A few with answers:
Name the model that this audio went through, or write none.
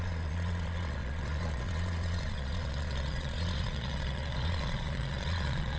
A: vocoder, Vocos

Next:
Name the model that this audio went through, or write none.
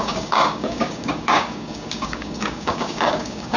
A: codec, DAC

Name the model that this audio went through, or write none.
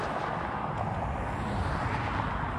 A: none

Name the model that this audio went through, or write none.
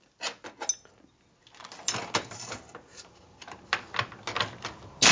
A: none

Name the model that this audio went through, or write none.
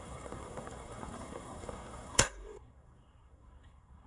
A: codec, SNAC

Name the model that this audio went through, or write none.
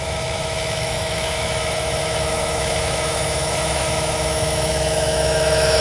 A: autoencoder, DAC-VAE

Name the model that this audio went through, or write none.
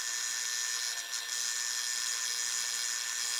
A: none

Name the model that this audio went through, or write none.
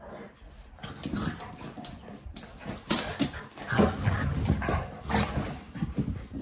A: none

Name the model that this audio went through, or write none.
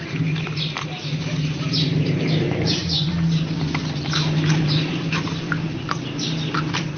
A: vocoder, BigVGAN v2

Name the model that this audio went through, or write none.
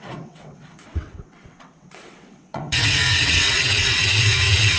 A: vocoder, WaveNeXt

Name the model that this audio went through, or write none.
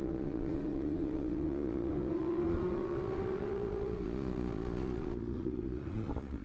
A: vocoder, Vocos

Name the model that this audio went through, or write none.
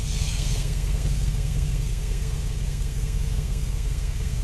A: codec, SNAC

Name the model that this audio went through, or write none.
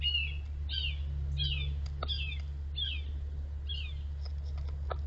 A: none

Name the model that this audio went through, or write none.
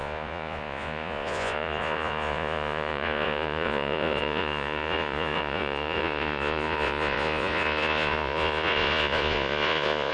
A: vocoder, Vocos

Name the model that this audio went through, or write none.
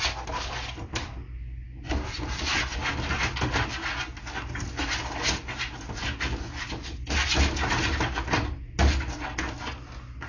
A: none